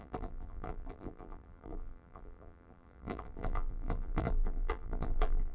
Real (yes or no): no